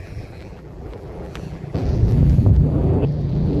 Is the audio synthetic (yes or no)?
yes